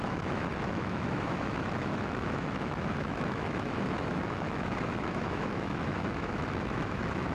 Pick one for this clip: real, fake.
fake